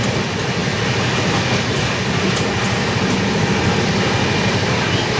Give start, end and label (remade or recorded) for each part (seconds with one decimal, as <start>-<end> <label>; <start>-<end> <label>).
0.0-5.2 recorded